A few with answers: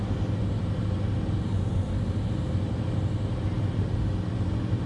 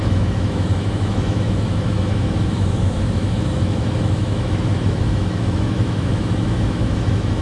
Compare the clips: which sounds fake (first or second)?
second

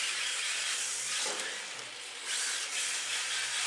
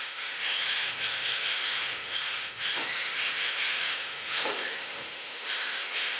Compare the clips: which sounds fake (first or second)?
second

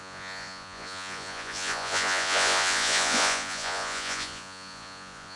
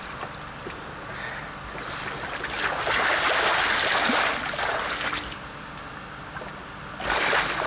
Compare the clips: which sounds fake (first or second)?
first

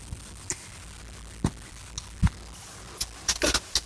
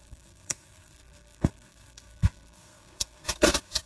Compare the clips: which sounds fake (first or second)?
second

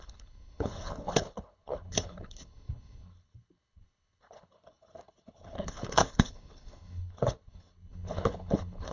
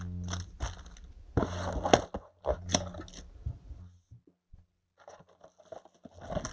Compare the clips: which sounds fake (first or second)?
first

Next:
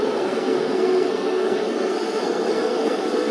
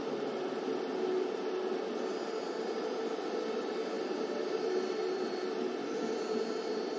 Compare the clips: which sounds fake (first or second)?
first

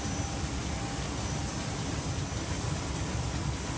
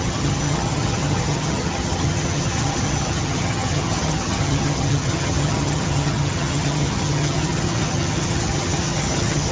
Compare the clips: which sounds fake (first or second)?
second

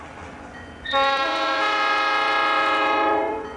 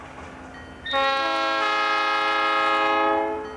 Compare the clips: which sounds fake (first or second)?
first